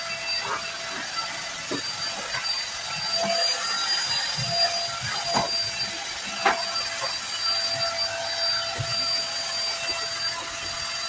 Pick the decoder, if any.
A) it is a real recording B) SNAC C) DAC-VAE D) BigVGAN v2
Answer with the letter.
A